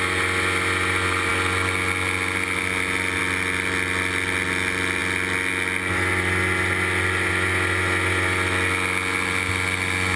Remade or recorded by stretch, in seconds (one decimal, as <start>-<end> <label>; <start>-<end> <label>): 0.0-10.2 recorded